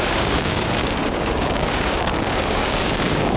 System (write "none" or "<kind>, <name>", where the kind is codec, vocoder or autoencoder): codec, DAC